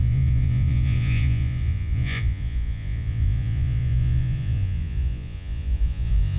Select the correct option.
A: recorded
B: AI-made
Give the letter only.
B